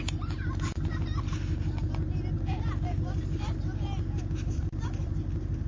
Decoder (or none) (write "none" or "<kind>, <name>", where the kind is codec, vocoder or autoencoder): none